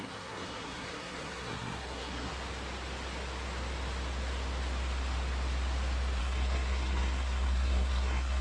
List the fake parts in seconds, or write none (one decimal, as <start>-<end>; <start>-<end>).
0.0-2.3; 6.2-8.4